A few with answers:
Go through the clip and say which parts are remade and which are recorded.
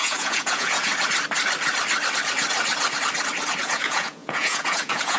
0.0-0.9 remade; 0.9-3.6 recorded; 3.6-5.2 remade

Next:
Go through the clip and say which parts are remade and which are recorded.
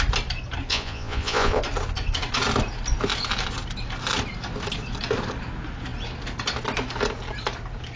0.0-0.7 recorded; 0.7-1.6 remade; 1.6-8.0 recorded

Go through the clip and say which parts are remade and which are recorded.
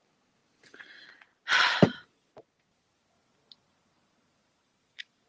0.0-5.3 recorded